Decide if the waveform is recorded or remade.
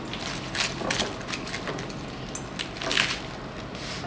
recorded